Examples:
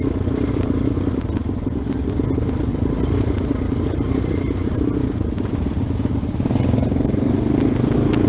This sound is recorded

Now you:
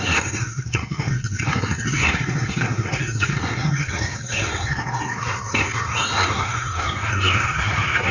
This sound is remade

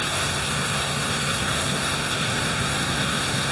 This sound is remade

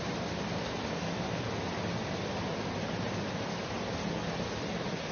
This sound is recorded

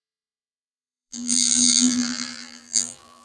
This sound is remade